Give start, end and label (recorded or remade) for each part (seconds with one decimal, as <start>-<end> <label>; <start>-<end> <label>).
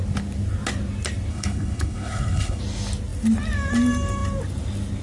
0.0-1.3 recorded; 1.3-2.6 remade; 2.6-5.0 recorded